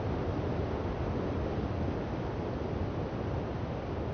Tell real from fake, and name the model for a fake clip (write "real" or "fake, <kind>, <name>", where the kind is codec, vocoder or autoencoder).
real